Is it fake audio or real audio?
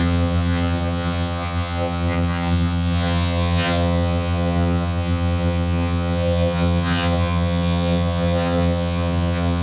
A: fake